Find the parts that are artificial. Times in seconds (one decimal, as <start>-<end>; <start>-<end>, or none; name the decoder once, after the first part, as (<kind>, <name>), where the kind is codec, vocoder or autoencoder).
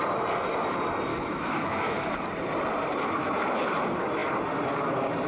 1.1-2.1 (autoencoder, DAC-VAE)